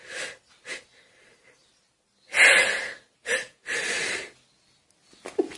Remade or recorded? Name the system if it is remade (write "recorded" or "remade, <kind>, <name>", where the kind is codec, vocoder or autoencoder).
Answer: recorded